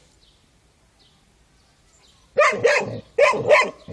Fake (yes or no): no